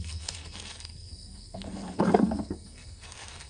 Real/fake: fake